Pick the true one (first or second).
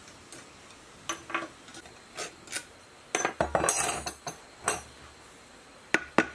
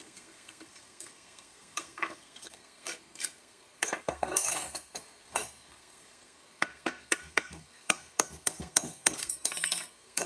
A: first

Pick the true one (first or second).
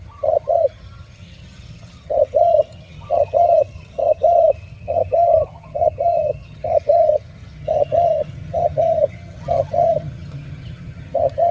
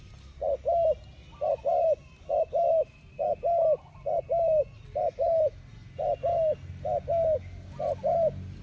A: second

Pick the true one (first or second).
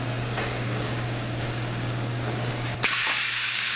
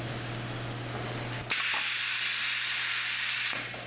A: second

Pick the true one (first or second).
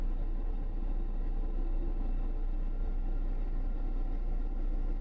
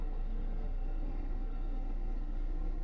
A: first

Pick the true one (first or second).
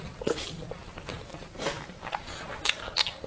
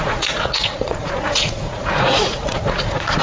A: first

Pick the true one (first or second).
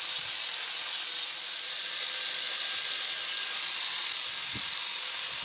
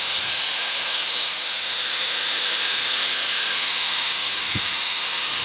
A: first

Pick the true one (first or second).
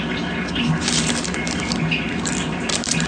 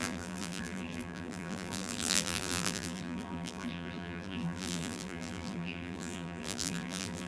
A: first